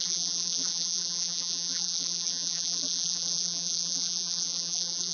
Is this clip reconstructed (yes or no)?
yes